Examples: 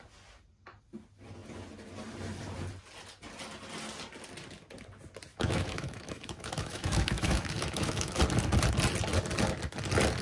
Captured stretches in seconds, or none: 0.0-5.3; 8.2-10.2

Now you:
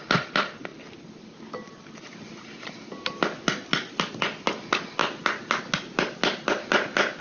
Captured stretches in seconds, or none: 0.0-7.2

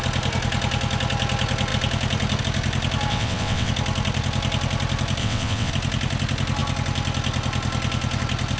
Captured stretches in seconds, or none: 0.0-3.1; 3.7-5.2; 5.7-8.6

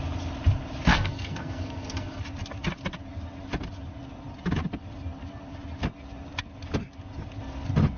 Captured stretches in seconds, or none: 0.0-0.9; 2.2-8.0

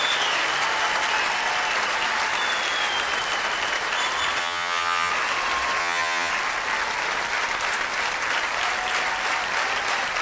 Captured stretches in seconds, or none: 0.0-4.4; 5.1-5.8; 6.3-10.2